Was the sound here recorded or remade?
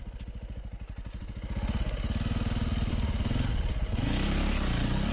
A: recorded